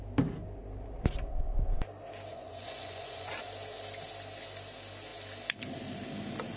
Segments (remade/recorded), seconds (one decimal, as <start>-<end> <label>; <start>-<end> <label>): 0.0-2.3 recorded; 2.3-3.3 remade; 3.3-6.6 recorded